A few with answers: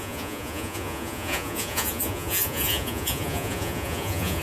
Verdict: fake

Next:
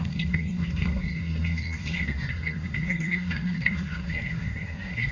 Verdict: fake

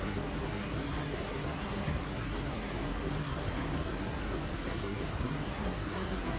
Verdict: fake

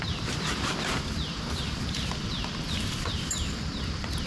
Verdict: fake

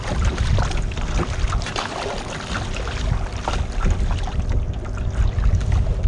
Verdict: real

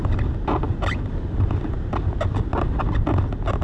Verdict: real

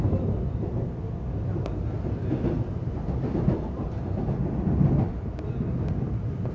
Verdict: real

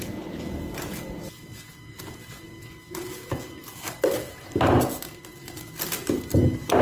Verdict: real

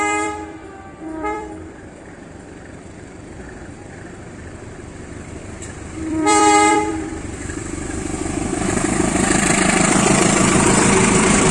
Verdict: fake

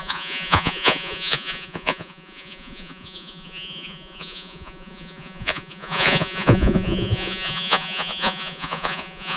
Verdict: fake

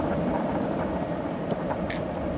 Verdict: real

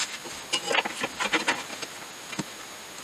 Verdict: real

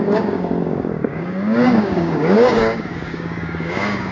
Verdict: fake